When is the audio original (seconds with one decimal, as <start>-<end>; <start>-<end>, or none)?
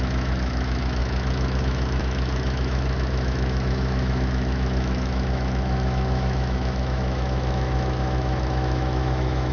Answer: none